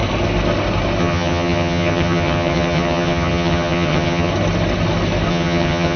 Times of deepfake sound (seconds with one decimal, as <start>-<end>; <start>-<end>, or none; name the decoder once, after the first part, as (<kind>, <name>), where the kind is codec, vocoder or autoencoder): 1.0-4.3 (vocoder, HiFi-GAN); 5.3-6.0